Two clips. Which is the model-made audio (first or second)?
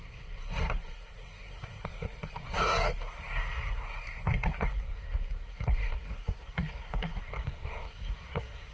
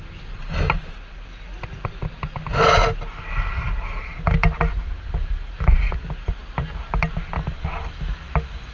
first